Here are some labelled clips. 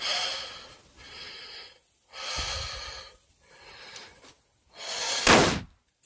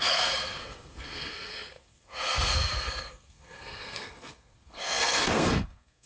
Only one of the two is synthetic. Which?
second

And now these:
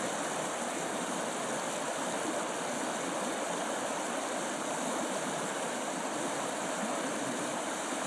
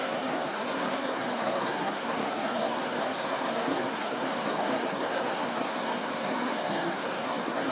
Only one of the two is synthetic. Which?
second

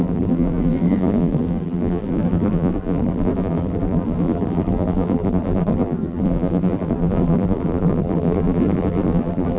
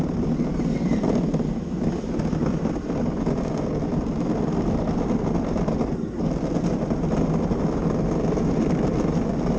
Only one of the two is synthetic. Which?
first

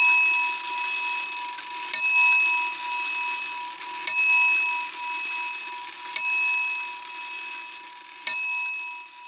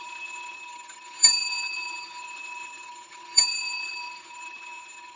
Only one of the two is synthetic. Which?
second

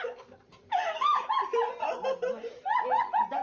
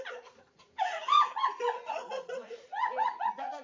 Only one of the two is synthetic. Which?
second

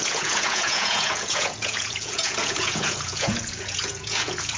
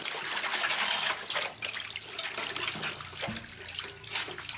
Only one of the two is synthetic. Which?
first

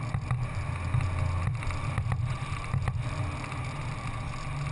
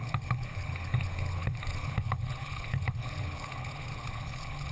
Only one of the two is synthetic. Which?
second